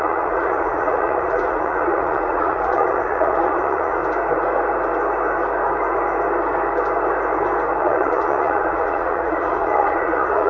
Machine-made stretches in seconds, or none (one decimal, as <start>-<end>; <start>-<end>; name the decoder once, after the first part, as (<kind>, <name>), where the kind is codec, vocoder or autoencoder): 0.0-4.0 (vocoder, Vocos); 7.8-10.5